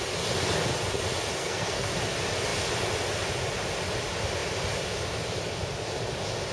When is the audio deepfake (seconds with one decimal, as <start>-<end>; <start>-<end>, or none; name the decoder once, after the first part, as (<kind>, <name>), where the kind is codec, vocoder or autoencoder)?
1.4-1.9 (codec, SNAC)